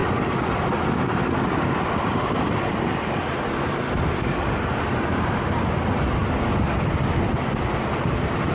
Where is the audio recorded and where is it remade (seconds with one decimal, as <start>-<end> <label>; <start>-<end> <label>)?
0.0-8.5 recorded